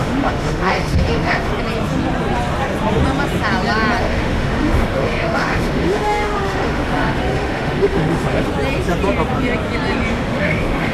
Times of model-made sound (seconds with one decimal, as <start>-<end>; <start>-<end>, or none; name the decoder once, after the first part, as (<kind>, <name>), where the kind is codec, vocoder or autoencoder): 0.0-1.5 (autoencoder, DAC-VAE); 4.0-8.5; 10.1-10.9

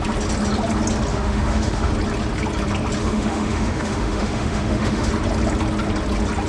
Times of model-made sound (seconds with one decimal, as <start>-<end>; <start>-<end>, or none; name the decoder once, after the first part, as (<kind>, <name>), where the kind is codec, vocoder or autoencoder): 1.1-1.9 (autoencoder, DAC-VAE); 3.0-5.1

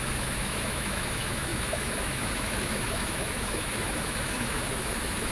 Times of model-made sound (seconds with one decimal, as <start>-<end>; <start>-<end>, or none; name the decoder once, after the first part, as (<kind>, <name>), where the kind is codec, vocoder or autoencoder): 0.0-5.3 (autoencoder, DAC-VAE)

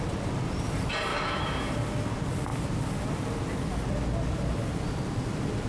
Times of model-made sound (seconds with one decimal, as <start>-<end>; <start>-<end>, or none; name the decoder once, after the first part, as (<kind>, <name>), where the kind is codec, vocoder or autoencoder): 1.1-1.7 (autoencoder, DAC-VAE)

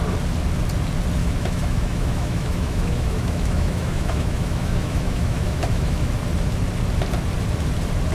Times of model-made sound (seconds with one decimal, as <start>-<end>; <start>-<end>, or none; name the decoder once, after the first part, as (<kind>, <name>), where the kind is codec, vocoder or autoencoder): 1.2-6.1 (autoencoder, DAC-VAE)

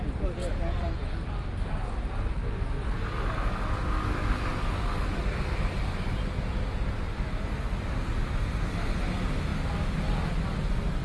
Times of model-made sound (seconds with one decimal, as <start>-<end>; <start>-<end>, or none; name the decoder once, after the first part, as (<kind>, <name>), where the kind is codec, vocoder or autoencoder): none

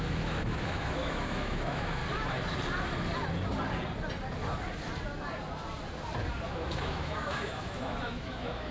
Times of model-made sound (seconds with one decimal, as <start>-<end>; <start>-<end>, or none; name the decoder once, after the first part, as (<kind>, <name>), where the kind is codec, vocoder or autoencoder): 0.0-2.0 (autoencoder, DAC-VAE); 6.5-8.7